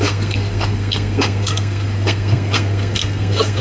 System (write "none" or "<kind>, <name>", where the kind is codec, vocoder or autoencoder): codec, SNAC